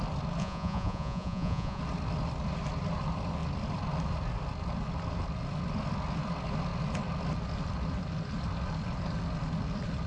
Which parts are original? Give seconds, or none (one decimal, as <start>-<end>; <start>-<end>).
0.0-0.4; 1.8-10.1